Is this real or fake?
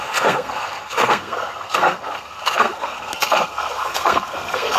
fake